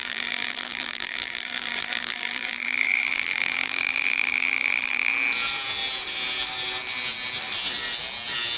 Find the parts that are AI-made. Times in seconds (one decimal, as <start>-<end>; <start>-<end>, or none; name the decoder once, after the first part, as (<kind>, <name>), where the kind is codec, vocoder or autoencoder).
0.0-5.1 (vocoder, BigVGAN v2)